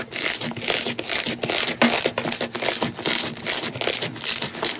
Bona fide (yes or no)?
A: yes